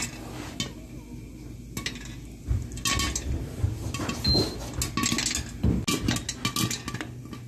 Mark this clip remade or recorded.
recorded